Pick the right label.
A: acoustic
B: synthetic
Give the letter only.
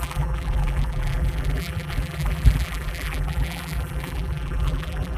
B